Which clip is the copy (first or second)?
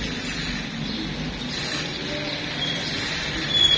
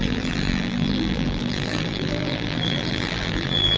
second